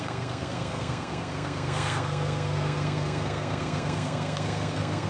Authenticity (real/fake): fake